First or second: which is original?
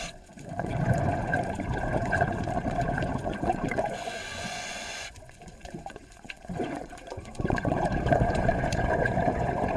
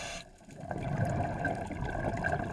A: second